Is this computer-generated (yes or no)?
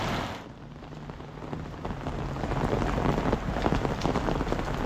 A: no